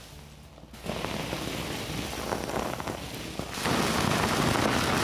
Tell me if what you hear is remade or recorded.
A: recorded